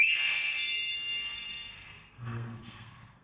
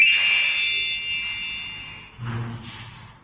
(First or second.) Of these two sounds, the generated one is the first